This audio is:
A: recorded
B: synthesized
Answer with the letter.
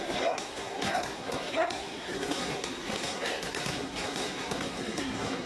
B